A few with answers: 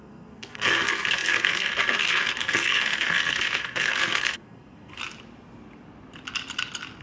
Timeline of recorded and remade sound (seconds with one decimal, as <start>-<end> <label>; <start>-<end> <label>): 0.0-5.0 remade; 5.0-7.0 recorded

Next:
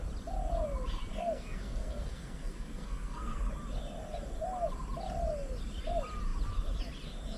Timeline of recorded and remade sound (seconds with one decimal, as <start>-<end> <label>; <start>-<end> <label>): 0.0-1.1 recorded; 1.1-3.5 remade; 3.5-7.4 recorded

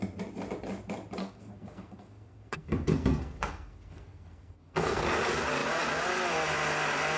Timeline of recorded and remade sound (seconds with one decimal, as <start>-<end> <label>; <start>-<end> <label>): 0.0-1.2 recorded; 1.2-5.0 remade; 5.0-7.2 recorded

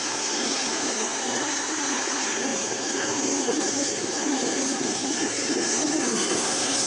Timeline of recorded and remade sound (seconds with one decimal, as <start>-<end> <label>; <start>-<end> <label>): 0.0-6.9 remade